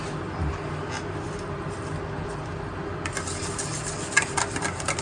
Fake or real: real